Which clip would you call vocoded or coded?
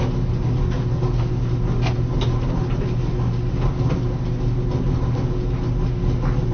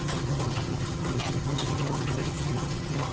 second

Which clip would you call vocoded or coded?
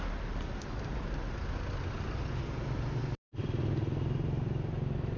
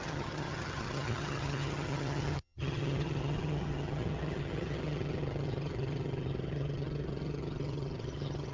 second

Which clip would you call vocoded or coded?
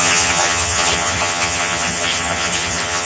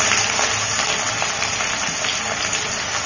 first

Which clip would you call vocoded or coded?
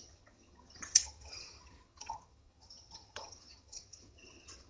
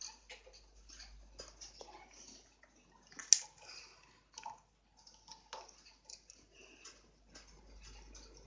first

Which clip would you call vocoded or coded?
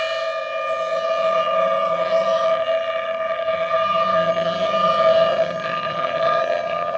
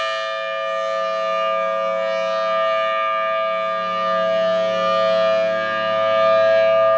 first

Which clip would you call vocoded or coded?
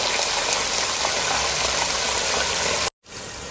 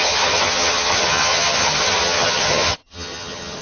second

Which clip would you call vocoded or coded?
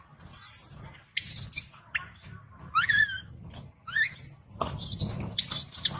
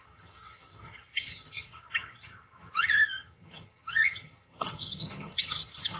second